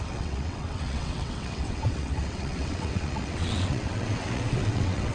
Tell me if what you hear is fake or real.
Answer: fake